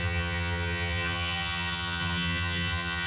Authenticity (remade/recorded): remade